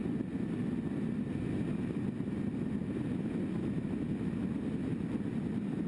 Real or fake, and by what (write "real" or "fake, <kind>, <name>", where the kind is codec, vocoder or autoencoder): real